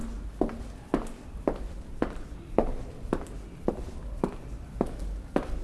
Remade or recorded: recorded